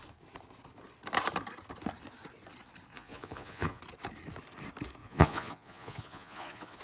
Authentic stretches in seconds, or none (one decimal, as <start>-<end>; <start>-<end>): 0.0-2.9; 3.8-5.0